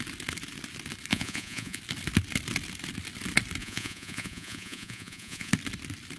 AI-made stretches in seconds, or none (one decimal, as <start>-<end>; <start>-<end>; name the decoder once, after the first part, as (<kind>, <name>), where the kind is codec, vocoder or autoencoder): 1.1-1.8 (vocoder, Vocos); 3.6-5.5